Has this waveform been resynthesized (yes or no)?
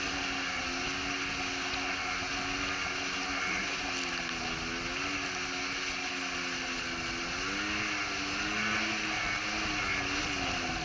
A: no